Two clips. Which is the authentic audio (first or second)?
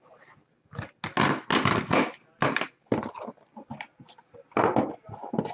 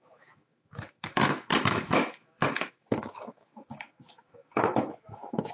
first